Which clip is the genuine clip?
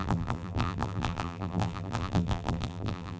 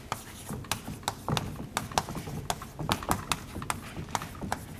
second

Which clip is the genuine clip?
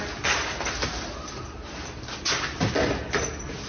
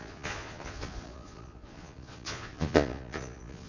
first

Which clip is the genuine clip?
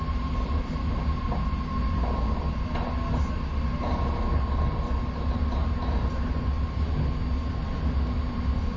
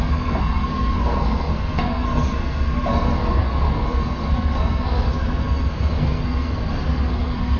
first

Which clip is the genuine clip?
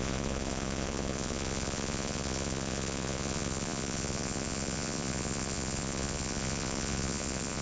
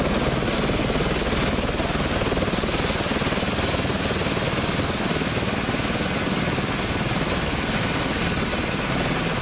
second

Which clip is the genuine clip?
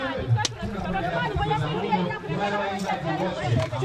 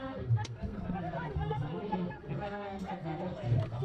first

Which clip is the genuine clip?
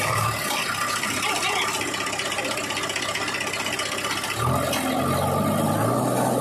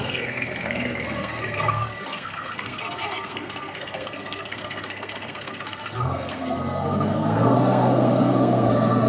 first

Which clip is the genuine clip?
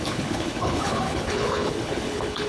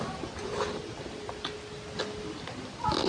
second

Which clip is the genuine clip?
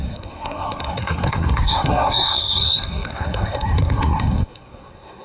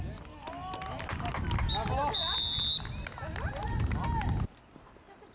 second